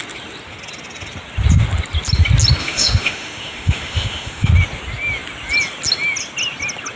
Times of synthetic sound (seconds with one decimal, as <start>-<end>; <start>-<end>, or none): 2.6-4.5